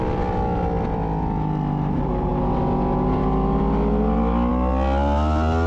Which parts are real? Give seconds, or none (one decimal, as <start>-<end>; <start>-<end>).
0.0-5.7